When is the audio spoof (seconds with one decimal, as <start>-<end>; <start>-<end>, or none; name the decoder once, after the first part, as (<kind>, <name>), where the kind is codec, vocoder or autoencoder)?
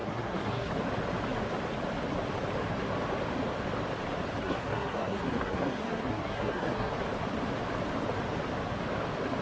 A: 0.0-0.7 (codec, SNAC); 4.4-6.9